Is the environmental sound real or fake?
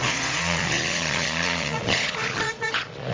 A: fake